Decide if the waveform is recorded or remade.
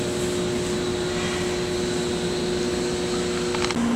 recorded